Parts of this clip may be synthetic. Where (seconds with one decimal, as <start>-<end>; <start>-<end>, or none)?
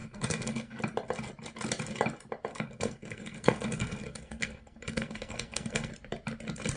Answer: 0.0-0.8; 2.5-5.9